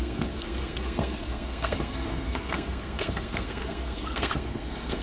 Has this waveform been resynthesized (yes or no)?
yes